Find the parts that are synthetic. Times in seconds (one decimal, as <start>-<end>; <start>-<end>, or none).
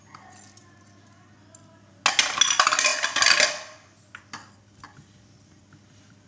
none